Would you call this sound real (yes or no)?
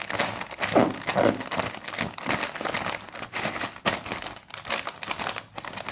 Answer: yes